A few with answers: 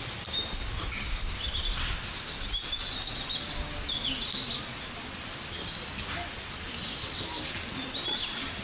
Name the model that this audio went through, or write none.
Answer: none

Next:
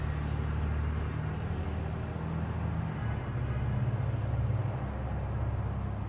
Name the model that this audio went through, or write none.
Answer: none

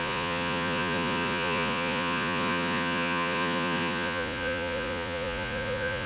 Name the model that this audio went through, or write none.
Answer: vocoder, Vocos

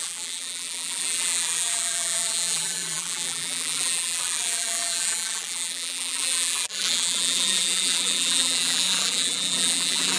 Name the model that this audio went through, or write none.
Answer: vocoder, BigVGAN v2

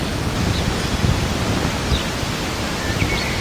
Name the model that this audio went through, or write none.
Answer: none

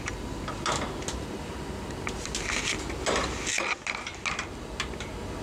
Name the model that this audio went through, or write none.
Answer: none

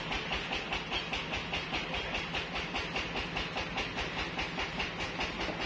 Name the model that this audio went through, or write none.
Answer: none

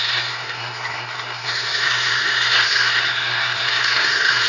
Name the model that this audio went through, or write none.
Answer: codec, SNAC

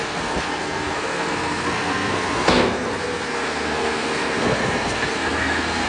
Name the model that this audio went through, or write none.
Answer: codec, SNAC